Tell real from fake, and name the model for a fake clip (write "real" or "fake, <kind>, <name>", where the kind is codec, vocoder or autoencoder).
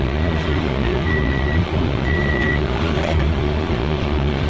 fake, vocoder, Vocos